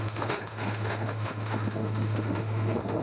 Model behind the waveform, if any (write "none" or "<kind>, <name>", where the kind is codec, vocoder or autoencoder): autoencoder, DAC-VAE